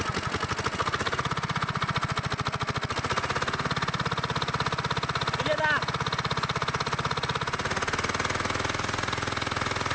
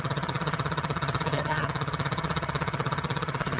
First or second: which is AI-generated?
second